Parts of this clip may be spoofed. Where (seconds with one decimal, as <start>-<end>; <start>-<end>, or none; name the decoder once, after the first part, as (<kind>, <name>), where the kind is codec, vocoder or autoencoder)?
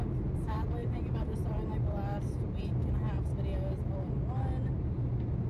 0.8-2.9 (vocoder, BigVGAN v2)